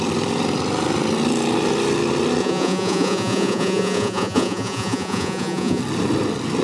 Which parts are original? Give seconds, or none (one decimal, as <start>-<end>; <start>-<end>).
0.0-2.4; 5.8-6.6